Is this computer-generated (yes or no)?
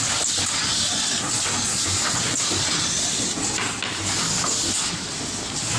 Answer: no